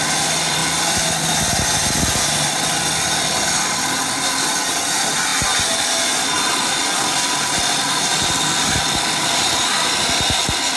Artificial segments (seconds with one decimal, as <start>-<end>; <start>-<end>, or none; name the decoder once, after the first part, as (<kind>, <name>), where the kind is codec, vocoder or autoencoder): none